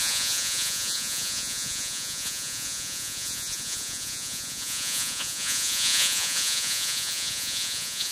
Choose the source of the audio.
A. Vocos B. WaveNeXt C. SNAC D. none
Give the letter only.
A